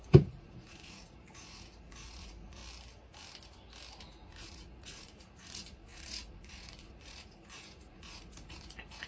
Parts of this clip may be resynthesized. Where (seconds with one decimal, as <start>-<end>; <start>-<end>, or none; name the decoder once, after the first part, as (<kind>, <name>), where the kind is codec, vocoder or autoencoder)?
0.0-2.6 (vocoder, Vocos); 3.9-9.1